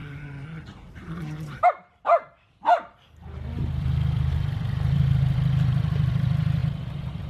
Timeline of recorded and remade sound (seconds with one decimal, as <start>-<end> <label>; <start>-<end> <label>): 0.0-3.7 recorded; 3.7-7.3 remade